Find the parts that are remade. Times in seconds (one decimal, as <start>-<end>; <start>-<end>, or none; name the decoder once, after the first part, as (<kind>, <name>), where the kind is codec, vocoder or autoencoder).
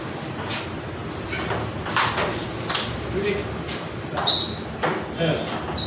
none